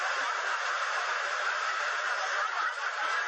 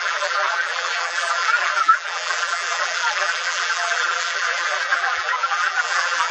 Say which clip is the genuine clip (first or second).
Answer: first